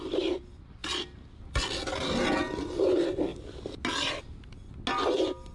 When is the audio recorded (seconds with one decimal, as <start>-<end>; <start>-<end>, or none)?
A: 0.0-5.5

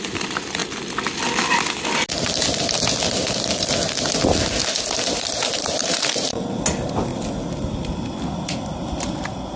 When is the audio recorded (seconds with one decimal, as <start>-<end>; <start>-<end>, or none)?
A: 0.6-4.8; 7.1-8.9

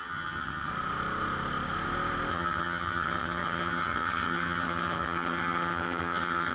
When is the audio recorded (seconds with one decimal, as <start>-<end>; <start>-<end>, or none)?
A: 0.7-2.3

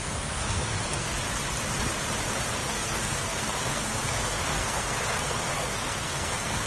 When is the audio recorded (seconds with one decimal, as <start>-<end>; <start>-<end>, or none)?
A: 1.1-2.6